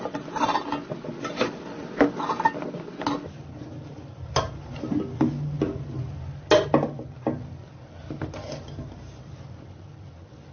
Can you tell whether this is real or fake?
real